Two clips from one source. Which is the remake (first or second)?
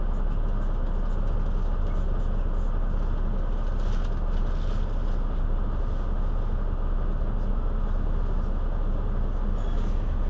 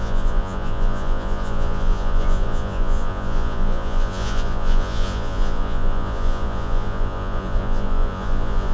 second